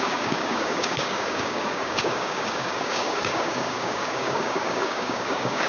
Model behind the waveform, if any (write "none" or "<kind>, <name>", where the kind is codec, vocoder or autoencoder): codec, DAC